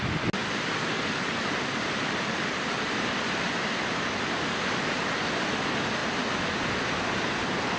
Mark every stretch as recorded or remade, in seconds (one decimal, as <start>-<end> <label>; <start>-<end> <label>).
0.0-7.8 recorded